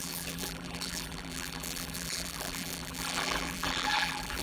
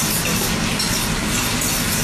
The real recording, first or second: second